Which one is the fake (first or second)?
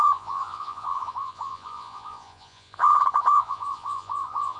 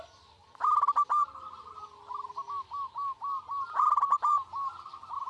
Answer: first